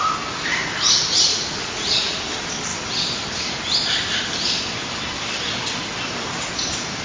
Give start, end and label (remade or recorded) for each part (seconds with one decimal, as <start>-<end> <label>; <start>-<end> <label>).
0.0-1.3 recorded; 1.3-2.2 remade; 2.2-7.0 recorded